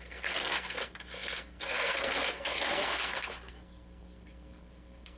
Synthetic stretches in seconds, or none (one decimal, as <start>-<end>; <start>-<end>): 0.0-5.2